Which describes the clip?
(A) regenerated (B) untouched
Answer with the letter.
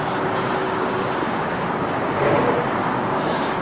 A